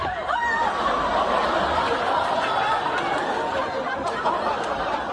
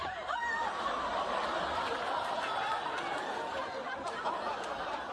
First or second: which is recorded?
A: first